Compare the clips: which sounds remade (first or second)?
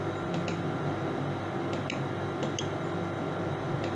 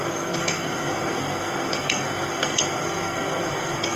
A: second